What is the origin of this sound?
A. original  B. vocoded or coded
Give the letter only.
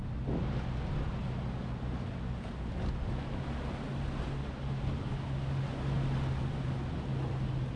A